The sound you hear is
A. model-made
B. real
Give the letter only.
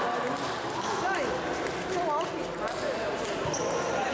B